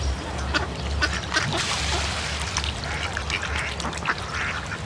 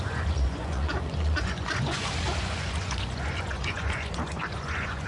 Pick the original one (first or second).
first